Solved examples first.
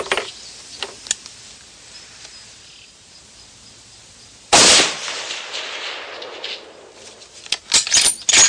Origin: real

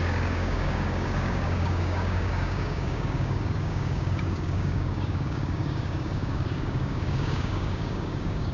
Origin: fake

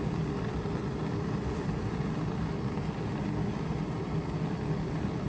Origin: fake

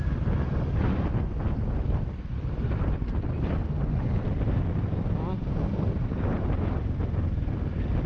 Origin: real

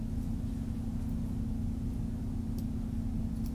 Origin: real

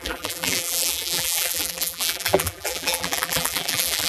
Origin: fake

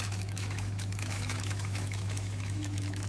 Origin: fake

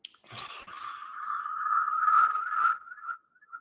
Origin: real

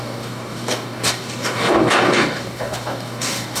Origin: fake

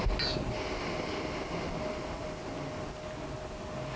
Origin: real